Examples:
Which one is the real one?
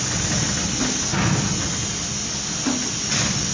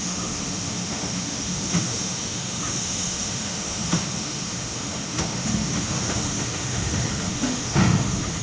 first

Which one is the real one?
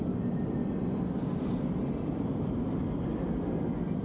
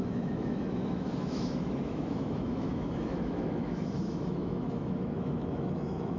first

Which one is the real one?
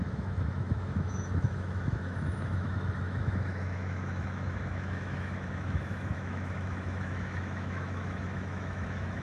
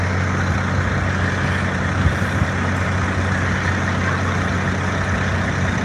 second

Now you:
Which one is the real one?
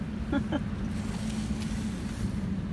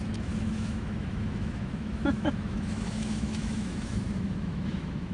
first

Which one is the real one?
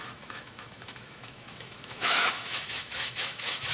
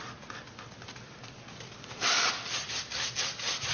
second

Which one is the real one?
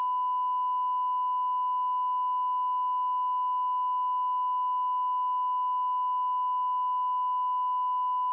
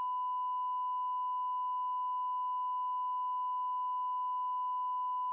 first